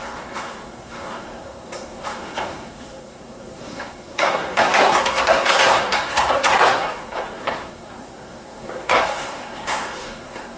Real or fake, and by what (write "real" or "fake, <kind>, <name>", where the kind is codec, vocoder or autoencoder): fake, codec, SNAC